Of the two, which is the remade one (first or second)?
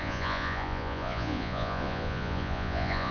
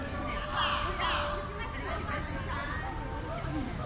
first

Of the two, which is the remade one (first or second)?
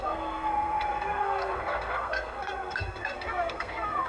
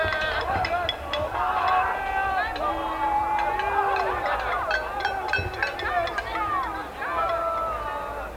first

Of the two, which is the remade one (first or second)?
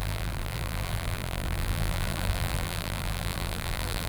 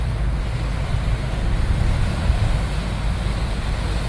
first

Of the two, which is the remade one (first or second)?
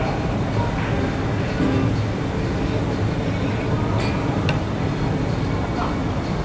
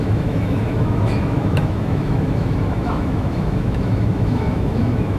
second